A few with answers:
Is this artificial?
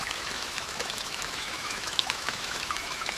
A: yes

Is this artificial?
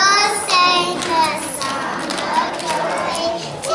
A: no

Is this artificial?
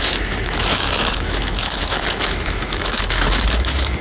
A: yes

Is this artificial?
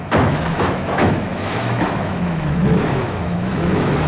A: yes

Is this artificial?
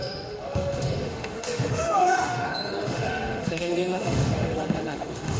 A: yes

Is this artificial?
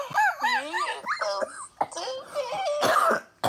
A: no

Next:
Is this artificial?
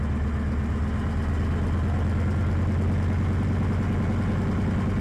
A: no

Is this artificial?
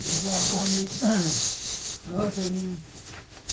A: yes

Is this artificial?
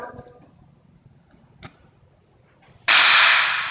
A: no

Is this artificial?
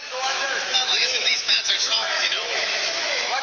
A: yes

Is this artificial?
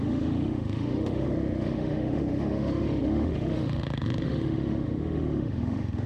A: yes